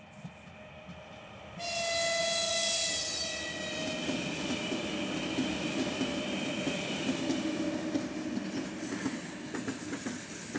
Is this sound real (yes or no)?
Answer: yes